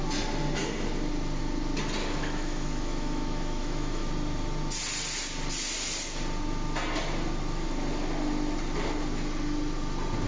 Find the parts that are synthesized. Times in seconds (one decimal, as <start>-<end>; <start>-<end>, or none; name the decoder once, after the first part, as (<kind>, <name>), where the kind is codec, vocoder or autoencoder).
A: 2.0-4.1 (autoencoder, DAC-VAE)